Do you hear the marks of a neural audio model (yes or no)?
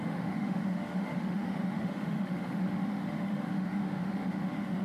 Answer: yes